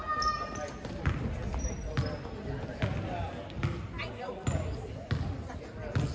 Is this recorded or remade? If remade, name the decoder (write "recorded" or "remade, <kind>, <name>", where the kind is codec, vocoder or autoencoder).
recorded